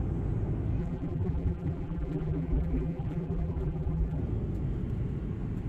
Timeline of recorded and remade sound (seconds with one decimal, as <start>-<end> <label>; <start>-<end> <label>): 0.0-0.8 recorded; 0.8-4.2 remade; 4.2-5.7 recorded